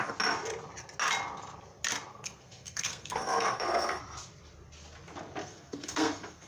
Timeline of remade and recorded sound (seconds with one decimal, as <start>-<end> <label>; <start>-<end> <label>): 0.0-2.1 recorded; 2.1-4.0 remade; 4.0-5.4 recorded; 5.4-6.5 remade